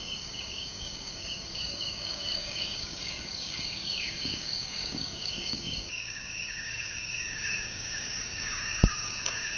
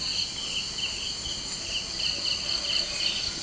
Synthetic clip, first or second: first